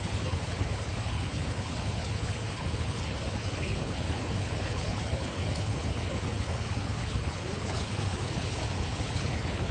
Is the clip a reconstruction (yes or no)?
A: yes